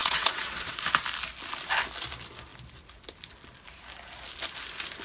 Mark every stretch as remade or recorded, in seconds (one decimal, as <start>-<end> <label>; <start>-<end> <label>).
0.0-0.8 remade; 0.8-5.0 recorded